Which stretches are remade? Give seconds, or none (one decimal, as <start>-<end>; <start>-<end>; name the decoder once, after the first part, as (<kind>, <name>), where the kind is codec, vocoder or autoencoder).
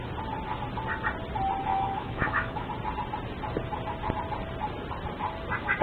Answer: 1.7-2.7 (autoencoder, DAC-VAE)